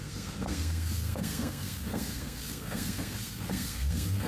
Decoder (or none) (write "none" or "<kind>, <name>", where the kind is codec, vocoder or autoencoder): codec, SNAC